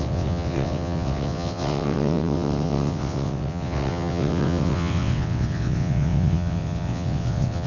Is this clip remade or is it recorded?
remade